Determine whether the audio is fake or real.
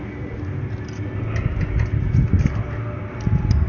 real